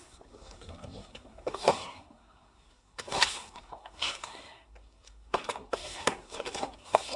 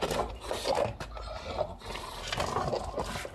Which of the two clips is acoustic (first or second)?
second